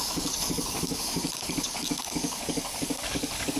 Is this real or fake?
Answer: fake